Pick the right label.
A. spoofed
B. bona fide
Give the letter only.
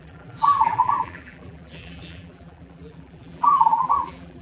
A